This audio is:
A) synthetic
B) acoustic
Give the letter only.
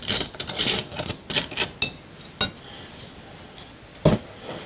B